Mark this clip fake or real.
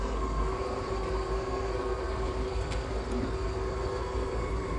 fake